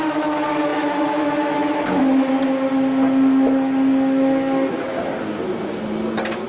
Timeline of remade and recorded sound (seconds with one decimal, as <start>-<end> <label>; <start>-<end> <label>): 0.0-0.7 recorded; 0.7-2.3 remade; 2.3-6.5 recorded